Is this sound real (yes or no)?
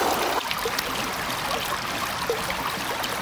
yes